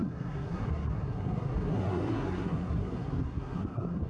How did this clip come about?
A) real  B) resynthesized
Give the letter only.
B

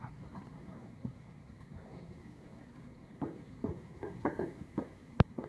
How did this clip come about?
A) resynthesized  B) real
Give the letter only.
A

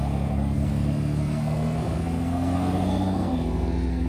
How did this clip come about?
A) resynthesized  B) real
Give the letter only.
A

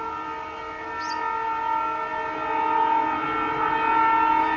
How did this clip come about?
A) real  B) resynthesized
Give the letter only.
A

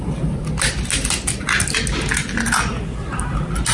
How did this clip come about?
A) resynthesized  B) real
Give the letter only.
B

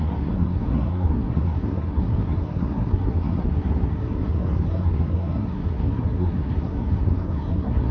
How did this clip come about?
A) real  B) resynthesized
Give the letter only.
B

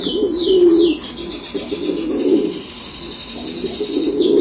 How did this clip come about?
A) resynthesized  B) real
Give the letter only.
B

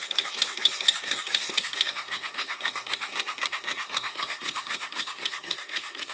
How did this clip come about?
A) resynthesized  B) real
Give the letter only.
A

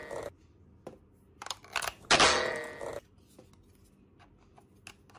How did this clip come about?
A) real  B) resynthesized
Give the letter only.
A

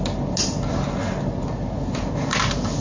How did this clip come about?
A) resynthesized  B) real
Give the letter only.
B